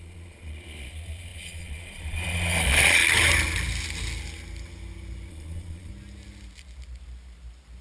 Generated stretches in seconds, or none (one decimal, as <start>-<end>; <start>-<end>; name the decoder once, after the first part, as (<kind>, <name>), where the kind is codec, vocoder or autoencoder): 0.0-3.0 (vocoder, Vocos); 5.3-5.9